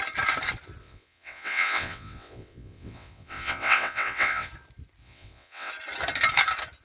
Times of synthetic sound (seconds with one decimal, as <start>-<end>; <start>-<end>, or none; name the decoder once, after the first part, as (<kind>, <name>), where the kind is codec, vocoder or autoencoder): 0.8-4.5 (vocoder, WaveNeXt); 5.0-5.7